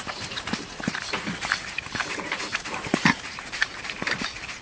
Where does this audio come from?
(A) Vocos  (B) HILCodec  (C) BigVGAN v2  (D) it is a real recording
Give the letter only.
C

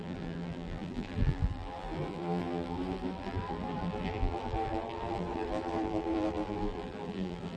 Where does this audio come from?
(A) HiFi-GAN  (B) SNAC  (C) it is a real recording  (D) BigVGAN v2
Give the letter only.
D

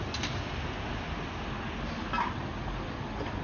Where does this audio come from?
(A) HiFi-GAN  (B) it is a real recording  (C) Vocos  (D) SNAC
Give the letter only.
B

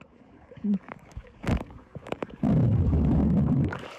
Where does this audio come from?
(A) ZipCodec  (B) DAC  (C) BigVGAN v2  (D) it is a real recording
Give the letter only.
B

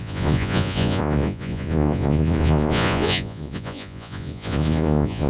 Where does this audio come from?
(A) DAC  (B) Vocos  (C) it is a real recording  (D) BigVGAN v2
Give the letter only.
B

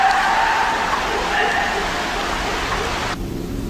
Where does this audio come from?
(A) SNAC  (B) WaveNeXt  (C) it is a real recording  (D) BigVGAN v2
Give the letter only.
C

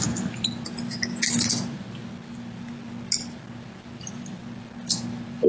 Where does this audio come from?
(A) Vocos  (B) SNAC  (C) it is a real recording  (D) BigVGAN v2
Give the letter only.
C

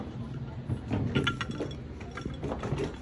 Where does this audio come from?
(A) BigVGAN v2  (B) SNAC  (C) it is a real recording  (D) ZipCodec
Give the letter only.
A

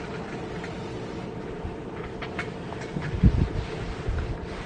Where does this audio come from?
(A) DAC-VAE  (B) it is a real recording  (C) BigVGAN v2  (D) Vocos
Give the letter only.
C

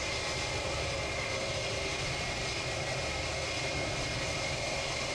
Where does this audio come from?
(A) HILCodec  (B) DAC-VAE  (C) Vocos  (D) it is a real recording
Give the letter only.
D